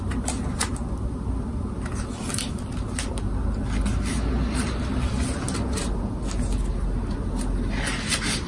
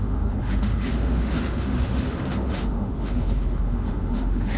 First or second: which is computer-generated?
second